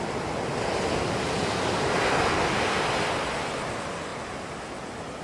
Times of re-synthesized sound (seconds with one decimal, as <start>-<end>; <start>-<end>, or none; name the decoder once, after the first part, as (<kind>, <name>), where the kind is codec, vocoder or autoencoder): none